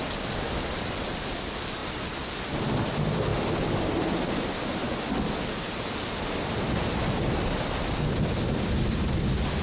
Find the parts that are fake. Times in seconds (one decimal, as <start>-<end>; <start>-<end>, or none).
none

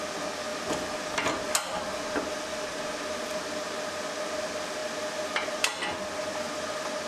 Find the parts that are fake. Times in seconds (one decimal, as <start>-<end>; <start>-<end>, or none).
none

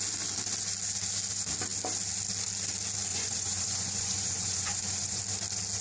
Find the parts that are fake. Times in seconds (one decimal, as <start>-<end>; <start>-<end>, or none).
3.1-5.2

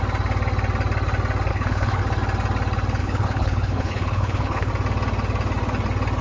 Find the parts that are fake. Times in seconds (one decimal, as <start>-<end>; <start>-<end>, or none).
1.5-2.0; 3.0-4.7

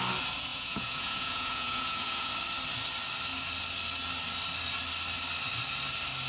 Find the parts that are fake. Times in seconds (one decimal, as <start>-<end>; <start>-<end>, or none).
0.5-2.3